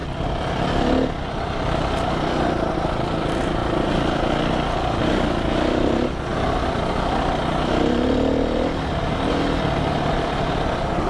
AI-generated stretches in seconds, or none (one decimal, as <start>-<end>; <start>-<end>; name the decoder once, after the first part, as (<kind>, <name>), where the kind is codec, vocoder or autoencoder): 3.6-4.2 (vocoder, BigVGAN v2)